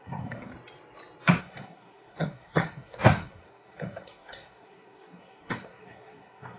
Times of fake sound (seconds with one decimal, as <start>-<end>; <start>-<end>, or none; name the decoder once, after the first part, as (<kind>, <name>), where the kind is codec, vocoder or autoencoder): 0.0-0.5 (codec, SNAC); 1.4-6.6